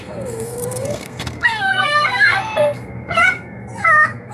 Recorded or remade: remade